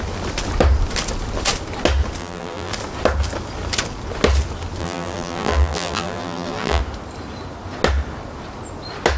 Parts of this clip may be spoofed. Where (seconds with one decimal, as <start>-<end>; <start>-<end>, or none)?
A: 2.2-2.7; 4.8-6.8